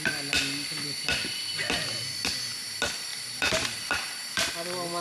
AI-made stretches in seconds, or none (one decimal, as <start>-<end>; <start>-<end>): 3.1-4.5